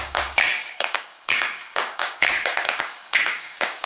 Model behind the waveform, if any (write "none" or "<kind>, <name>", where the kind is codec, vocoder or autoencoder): codec, DAC